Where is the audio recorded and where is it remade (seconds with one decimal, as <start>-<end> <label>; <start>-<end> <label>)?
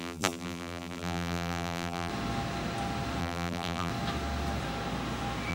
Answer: 0.0-2.1 remade; 2.1-3.2 recorded; 3.2-3.9 remade; 3.9-5.5 recorded